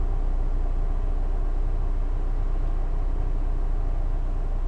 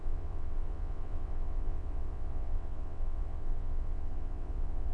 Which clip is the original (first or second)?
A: first